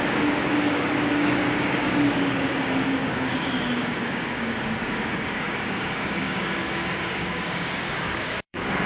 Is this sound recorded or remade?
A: remade